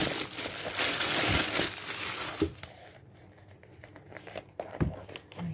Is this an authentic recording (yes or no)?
yes